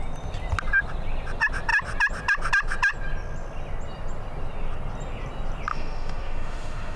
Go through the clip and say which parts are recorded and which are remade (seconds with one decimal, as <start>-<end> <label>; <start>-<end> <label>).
0.0-5.7 recorded; 5.7-7.0 remade